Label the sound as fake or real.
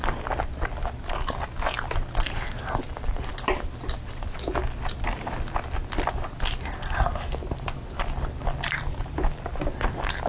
real